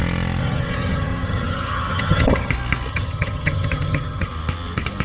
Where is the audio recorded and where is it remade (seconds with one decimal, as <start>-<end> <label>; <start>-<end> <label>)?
0.0-0.4 recorded; 0.4-2.5 remade; 2.5-2.9 recorded; 2.9-4.3 remade; 4.3-5.0 recorded